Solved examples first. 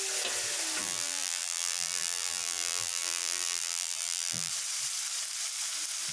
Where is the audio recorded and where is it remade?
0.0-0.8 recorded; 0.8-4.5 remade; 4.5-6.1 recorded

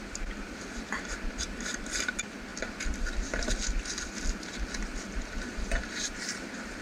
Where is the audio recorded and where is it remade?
0.0-6.8 recorded

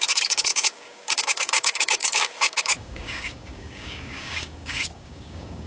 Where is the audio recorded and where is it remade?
0.0-5.7 remade